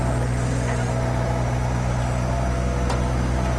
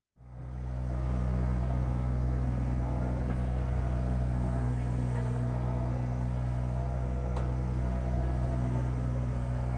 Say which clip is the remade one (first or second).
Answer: second